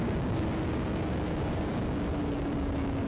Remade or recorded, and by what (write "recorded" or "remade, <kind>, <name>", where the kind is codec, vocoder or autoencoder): remade, codec, DAC